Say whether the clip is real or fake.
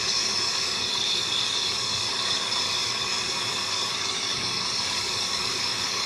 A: fake